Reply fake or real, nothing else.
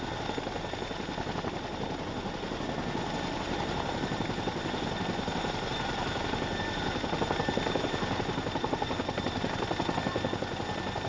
real